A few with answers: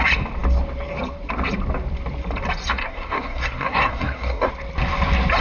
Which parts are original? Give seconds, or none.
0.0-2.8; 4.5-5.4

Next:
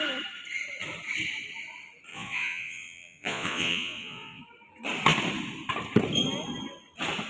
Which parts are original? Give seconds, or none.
0.0-2.1; 4.4-7.3